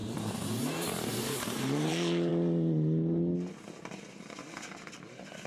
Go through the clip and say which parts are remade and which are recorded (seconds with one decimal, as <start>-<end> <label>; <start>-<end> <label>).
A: 0.0-0.6 remade; 0.6-1.1 recorded; 1.1-1.9 remade; 1.9-5.5 recorded